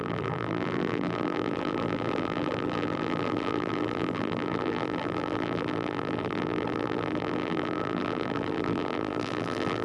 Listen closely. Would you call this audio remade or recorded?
remade